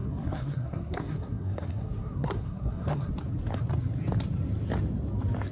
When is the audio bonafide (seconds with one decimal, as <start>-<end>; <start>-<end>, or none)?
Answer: 3.1-5.5